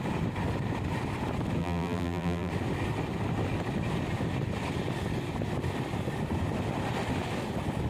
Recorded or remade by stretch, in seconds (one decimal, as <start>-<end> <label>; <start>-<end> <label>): 0.0-1.6 recorded; 1.6-2.5 remade; 2.5-7.9 recorded